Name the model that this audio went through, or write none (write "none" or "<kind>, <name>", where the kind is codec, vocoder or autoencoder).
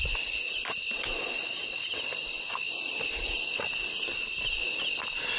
none